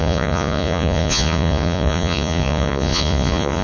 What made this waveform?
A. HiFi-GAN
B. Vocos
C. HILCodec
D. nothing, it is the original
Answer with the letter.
B